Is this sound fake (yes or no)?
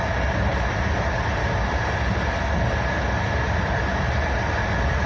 no